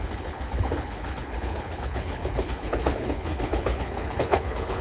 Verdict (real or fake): fake